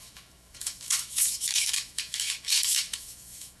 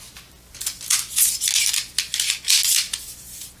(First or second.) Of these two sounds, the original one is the second